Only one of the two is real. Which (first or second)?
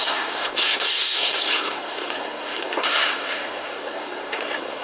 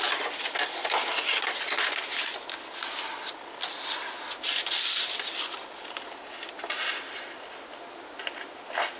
second